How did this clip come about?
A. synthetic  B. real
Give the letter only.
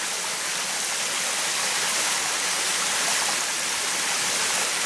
B